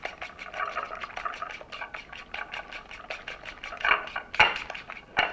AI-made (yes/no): no